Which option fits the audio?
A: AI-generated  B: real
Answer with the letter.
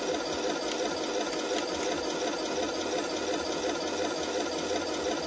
B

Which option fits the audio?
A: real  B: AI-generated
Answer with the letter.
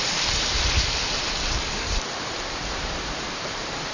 B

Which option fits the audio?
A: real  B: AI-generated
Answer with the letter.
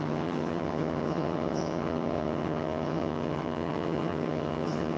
B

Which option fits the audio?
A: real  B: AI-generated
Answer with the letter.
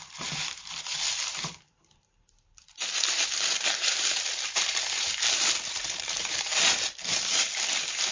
B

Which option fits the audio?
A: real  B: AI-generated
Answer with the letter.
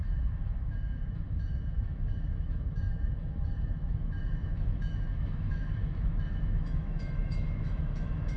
B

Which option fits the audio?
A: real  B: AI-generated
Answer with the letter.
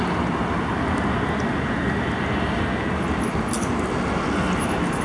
A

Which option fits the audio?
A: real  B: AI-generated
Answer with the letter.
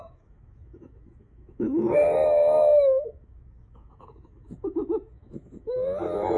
B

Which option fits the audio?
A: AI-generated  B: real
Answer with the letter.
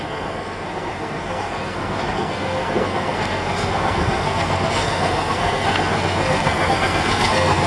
A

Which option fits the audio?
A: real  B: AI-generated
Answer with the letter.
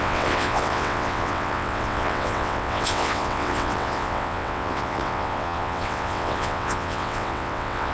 B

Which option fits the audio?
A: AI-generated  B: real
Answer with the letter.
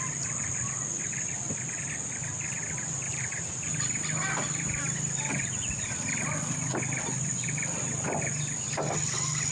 B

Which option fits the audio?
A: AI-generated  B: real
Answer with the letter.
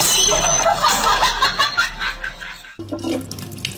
B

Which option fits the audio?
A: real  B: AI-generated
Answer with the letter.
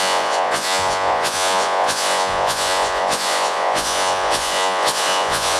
B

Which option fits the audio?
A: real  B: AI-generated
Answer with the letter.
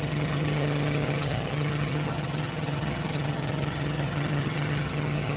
B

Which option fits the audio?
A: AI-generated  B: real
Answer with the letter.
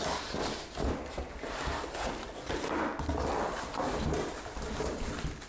B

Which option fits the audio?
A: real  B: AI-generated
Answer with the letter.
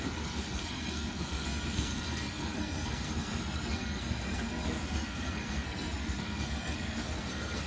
B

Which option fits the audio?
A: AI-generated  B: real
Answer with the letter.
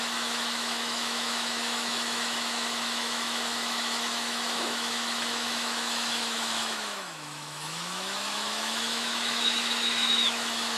A